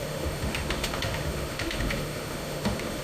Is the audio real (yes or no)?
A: no